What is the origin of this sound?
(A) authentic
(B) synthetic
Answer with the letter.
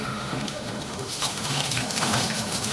B